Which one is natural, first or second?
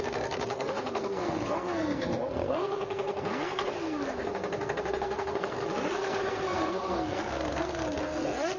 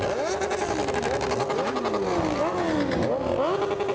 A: second